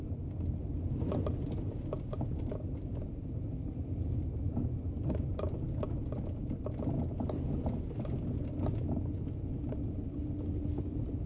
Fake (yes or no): no